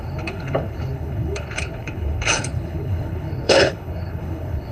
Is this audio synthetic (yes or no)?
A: yes